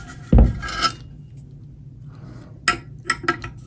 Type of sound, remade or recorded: recorded